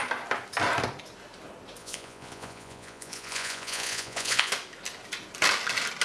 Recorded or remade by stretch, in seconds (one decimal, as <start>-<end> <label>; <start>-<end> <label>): 0.0-1.8 recorded; 1.8-4.5 remade; 4.5-6.0 recorded